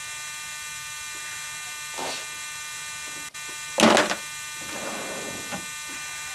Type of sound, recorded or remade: recorded